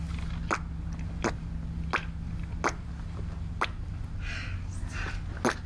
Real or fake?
real